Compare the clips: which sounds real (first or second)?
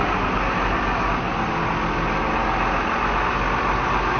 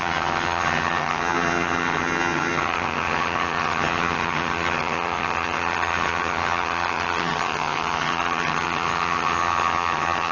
first